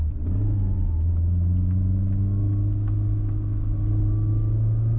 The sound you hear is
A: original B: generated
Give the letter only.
A